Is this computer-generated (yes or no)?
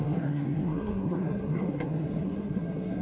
yes